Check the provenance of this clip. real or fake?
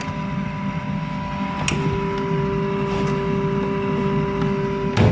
real